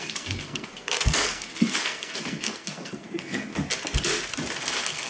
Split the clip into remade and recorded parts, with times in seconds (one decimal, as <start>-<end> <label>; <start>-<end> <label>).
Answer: 0.0-3.5 remade; 3.5-4.6 recorded; 4.6-5.1 remade